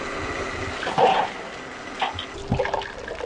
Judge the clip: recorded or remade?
recorded